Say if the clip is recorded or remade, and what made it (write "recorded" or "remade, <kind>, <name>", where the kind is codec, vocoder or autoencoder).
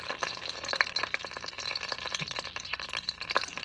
remade, vocoder, BigVGAN v2